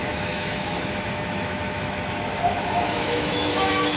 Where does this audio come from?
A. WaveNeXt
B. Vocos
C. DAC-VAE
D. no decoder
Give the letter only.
C